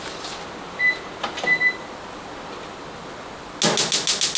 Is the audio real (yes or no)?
yes